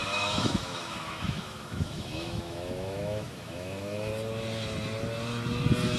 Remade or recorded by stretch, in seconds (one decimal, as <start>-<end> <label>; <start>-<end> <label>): 0.0-4.1 remade; 4.1-6.0 recorded